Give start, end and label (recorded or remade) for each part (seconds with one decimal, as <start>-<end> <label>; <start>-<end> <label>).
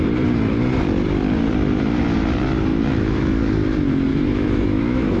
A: 0.0-2.7 recorded; 2.7-3.4 remade; 3.4-4.1 recorded; 4.1-5.2 remade